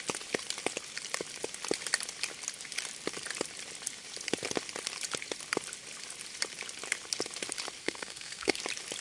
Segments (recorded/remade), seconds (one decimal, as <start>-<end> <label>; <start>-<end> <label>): 0.0-7.8 recorded; 7.8-8.6 remade; 8.6-9.0 recorded

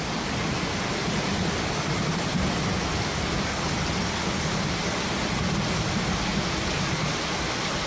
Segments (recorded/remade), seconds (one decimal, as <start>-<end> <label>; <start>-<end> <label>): 0.0-1.0 recorded; 1.0-2.4 remade; 2.4-6.3 recorded; 6.3-7.1 remade; 7.1-7.9 recorded